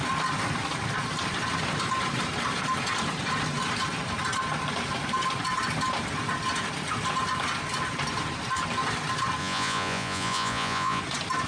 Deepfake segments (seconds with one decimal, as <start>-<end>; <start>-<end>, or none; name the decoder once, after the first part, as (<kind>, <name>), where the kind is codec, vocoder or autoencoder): 9.4-11.0 (vocoder, Vocos)